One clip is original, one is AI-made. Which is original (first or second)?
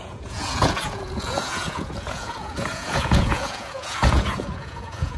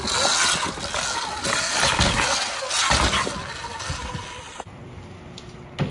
second